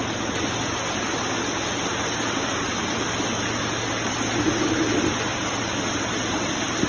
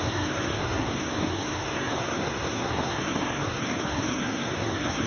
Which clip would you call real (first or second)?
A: first